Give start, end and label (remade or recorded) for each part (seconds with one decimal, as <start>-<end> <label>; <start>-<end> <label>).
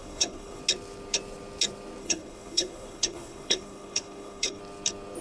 0.0-0.6 remade; 0.6-2.0 recorded; 2.0-4.6 remade; 4.6-5.2 recorded